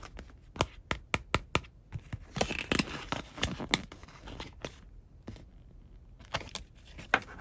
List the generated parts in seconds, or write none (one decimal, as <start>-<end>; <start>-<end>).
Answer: 4.0-5.7